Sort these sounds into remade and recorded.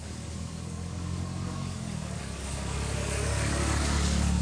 remade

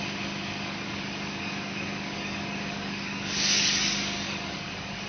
remade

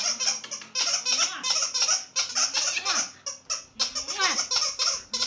recorded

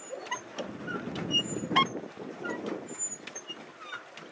recorded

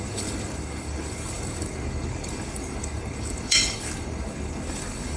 remade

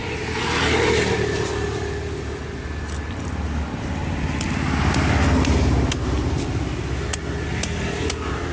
recorded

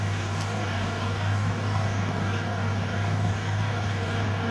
remade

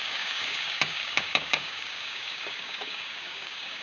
remade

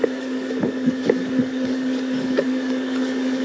remade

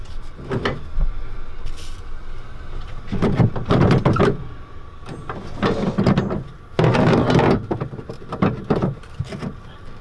recorded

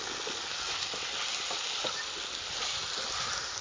recorded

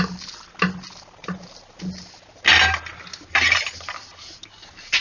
recorded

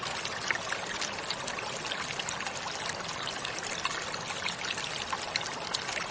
recorded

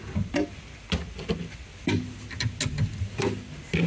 recorded